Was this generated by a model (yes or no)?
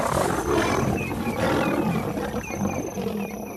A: no